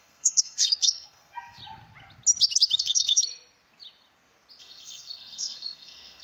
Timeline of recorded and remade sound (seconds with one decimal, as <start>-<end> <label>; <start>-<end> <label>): 0.0-1.6 remade; 1.6-2.8 recorded; 2.8-3.2 remade; 3.2-4.6 recorded; 4.6-6.2 remade